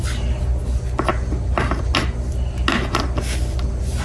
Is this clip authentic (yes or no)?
yes